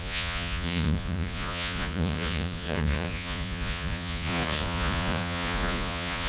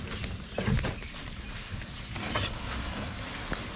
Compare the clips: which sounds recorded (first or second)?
second